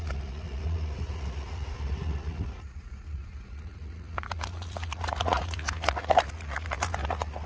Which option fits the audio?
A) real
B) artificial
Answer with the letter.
B